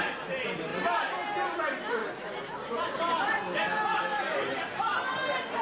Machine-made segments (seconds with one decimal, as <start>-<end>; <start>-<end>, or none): 2.0-3.0